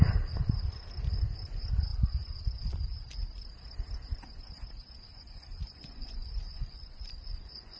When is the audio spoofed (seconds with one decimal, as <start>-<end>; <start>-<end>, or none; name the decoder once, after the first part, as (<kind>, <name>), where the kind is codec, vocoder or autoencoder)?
5.1-7.8 (vocoder, Vocos)